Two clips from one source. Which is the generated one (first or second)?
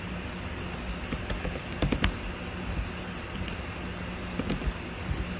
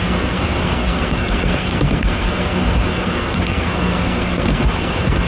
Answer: second